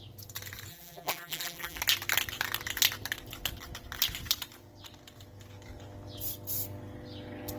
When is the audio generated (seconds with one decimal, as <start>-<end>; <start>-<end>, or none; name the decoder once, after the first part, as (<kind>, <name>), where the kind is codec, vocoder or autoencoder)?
0.7-1.8 (vocoder, BigVGAN v2)